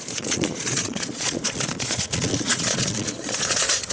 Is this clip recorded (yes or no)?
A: no